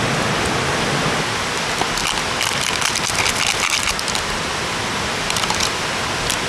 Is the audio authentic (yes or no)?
yes